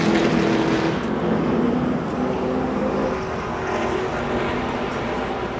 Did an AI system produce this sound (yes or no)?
no